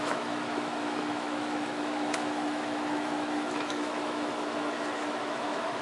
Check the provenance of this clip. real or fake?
fake